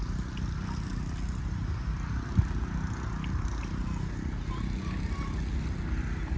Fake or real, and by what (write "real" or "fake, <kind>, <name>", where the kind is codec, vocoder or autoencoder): real